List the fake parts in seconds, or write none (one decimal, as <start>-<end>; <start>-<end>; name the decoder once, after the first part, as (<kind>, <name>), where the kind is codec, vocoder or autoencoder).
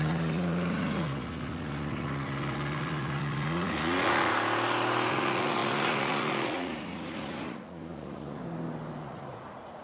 0.0-4.3 (vocoder, Vocos); 5.1-8.4; 9.0-9.8